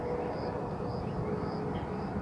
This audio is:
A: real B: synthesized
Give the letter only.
A